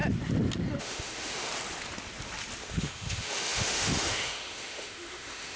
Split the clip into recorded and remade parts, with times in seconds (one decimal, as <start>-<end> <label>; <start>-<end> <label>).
0.0-0.8 recorded; 0.8-1.5 remade; 1.5-2.7 recorded; 2.7-5.6 remade